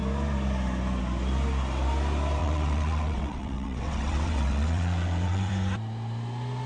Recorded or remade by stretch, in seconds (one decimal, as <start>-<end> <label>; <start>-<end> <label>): 0.0-2.4 recorded; 2.4-5.5 remade; 5.5-6.7 recorded